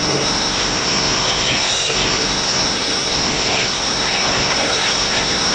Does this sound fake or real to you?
fake